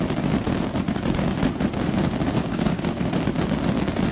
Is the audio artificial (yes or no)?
no